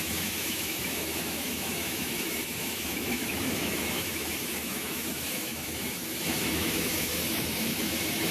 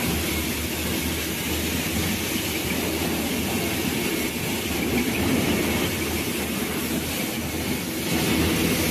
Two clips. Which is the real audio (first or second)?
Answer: second